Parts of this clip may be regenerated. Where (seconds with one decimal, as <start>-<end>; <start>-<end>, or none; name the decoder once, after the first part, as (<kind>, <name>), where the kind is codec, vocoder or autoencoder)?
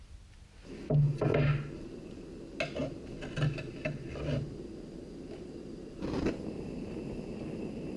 none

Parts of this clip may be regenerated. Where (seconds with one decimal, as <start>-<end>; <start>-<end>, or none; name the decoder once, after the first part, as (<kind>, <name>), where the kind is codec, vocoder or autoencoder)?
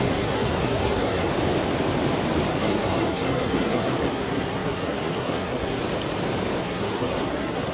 0.0-1.3 (codec, SNAC); 2.5-5.8; 6.6-7.7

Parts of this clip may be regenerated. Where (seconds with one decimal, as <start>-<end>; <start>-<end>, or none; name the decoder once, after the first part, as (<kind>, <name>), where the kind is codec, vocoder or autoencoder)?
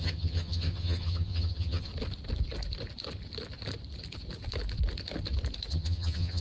0.0-1.9 (vocoder, HiFi-GAN); 5.7-6.4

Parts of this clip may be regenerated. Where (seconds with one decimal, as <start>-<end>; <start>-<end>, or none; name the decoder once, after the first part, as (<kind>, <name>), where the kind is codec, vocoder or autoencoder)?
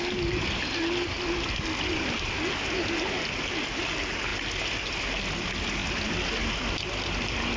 none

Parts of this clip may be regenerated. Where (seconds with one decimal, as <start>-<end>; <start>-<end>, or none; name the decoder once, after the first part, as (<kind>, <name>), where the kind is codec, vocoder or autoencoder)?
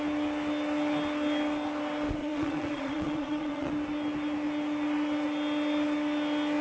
2.2-3.7 (vocoder, Vocos)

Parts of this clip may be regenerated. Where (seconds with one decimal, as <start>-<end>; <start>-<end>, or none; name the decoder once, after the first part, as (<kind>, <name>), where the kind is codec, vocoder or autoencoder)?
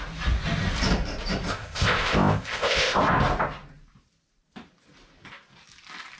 1.5-3.0 (codec, ZipCodec)